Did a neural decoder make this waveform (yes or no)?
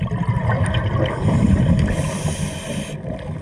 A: no